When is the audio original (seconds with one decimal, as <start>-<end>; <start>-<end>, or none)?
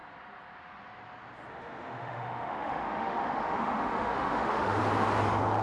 0.0-1.5; 4.8-5.6